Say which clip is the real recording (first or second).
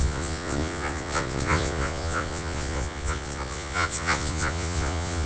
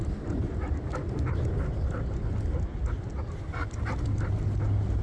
second